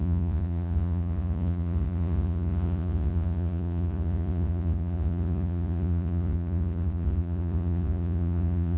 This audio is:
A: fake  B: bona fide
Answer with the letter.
A